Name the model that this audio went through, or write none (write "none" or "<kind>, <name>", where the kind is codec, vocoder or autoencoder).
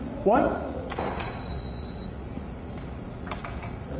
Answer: vocoder, Vocos